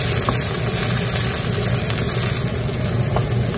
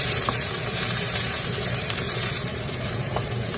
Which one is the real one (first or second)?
first